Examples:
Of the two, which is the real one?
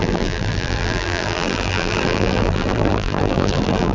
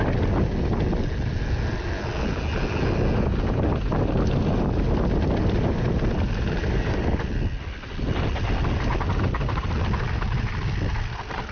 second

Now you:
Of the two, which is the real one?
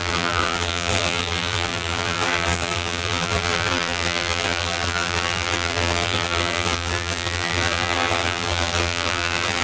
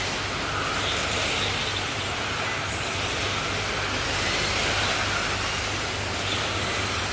second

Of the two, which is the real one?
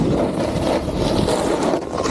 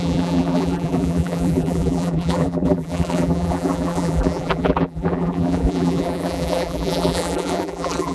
first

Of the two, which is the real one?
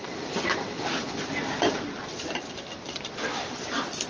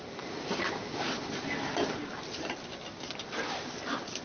second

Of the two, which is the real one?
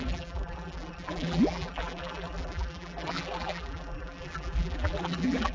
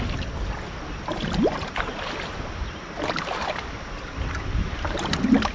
second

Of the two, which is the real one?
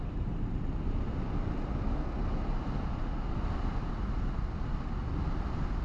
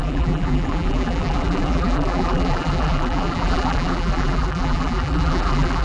first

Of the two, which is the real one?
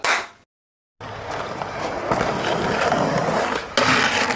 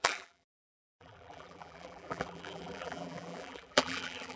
first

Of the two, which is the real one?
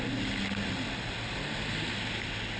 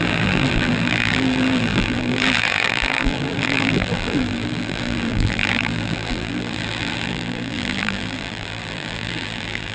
first